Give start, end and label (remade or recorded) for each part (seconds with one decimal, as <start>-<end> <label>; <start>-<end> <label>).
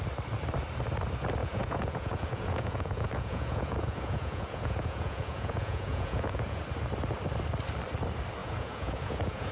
0.0-1.4 recorded; 1.4-6.6 remade; 6.6-8.4 recorded; 8.4-9.5 remade